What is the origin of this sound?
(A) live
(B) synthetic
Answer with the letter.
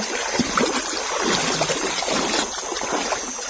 A